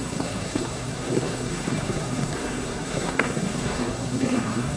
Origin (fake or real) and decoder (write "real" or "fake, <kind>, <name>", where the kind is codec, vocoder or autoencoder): fake, codec, SNAC